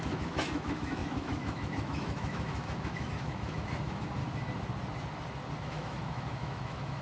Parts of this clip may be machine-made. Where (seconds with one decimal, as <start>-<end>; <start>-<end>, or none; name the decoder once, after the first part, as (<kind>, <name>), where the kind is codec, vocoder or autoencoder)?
0.0-4.2 (autoencoder, DAC-VAE); 5.6-7.0